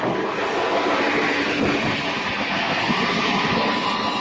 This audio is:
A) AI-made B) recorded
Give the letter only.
B